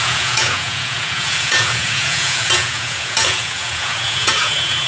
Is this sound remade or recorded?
remade